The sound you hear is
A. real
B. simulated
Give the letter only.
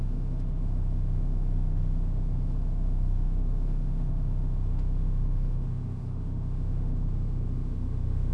B